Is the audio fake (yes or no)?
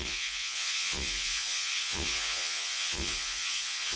yes